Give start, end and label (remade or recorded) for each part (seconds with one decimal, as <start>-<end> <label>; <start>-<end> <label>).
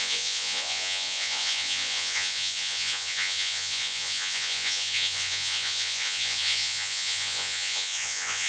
0.0-8.5 remade